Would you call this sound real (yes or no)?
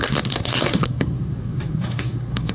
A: no